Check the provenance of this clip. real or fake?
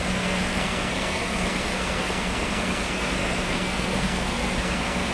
fake